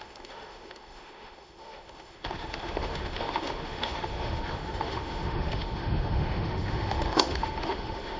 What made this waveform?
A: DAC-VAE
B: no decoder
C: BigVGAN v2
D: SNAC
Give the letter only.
A